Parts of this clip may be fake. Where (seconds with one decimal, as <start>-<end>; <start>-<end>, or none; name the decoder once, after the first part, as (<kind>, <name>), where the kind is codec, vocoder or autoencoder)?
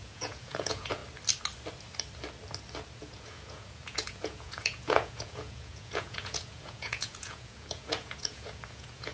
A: 0.0-1.0 (vocoder, Vocos); 3.0-9.1